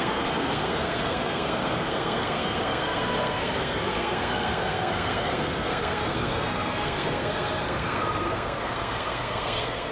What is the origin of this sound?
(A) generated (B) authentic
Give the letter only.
A